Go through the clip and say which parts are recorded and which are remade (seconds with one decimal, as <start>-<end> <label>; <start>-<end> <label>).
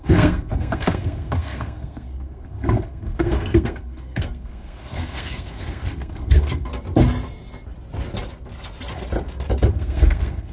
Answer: 0.0-6.7 remade; 6.7-9.7 recorded; 9.7-10.5 remade